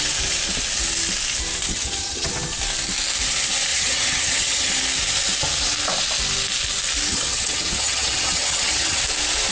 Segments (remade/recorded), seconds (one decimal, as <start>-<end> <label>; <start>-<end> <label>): 0.0-1.7 recorded; 1.7-2.3 remade; 2.3-3.7 recorded; 3.7-4.7 remade; 4.7-7.1 recorded; 7.1-9.0 remade; 9.0-9.5 recorded